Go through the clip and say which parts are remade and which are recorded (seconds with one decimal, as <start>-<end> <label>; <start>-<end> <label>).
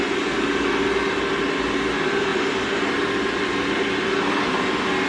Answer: 0.0-5.1 recorded